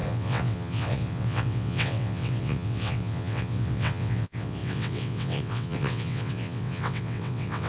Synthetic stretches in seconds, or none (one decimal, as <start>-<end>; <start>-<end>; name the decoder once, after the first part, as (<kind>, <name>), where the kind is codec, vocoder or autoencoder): 0.0-7.7 (vocoder, WaveNeXt)

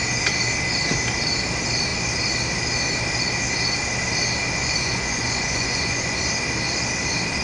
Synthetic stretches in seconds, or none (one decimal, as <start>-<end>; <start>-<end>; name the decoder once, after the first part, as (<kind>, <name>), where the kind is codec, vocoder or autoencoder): 4.6-6.2 (vocoder, Vocos)

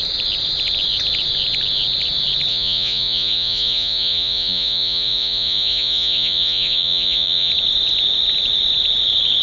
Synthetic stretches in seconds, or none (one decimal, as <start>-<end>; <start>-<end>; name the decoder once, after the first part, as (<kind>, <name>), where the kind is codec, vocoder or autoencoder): 2.5-7.5 (vocoder, Vocos)

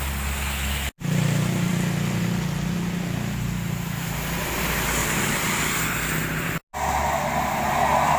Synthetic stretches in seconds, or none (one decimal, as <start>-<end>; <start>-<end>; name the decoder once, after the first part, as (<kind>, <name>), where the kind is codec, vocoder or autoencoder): 5.0-5.8 (vocoder, BigVGAN v2)

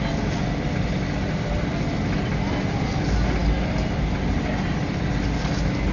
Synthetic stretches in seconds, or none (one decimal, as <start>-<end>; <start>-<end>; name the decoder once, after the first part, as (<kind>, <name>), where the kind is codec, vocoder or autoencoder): none

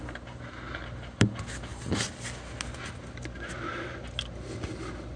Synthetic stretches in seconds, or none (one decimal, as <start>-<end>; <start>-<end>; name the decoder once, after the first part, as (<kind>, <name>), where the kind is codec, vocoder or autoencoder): none

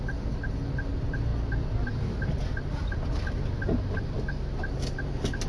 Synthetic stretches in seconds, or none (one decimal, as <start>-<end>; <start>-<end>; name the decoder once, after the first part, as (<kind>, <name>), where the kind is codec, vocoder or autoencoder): none

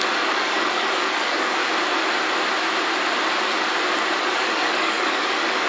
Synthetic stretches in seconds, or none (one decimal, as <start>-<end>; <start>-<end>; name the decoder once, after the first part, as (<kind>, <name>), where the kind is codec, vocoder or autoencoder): 0.0-1.6 (codec, DAC); 4.2-5.7